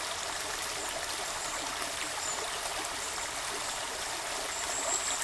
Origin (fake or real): real